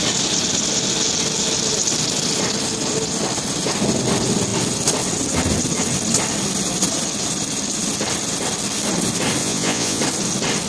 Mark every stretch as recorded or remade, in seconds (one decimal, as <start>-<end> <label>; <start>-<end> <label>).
0.0-9.4 recorded; 9.4-10.0 remade; 10.0-10.7 recorded